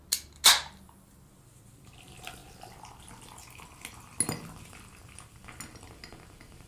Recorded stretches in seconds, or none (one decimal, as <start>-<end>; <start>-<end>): 0.0-6.7